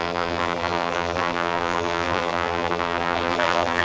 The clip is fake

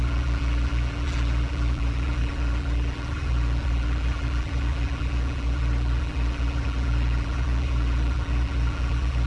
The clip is fake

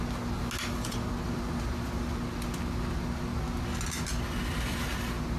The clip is real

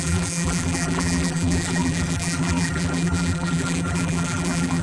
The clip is fake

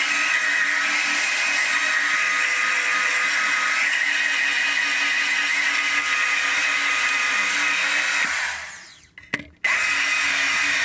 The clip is real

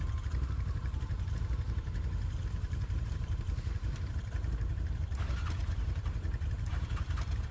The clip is fake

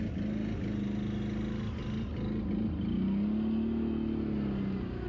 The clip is real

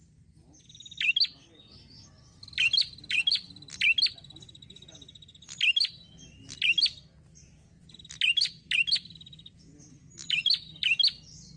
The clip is real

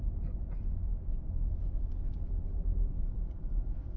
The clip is fake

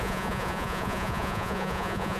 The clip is fake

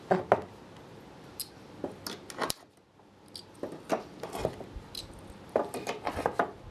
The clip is real